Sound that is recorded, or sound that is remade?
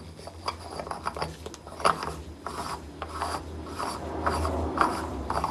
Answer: recorded